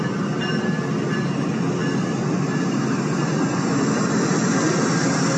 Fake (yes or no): no